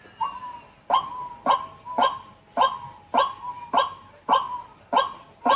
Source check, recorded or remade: recorded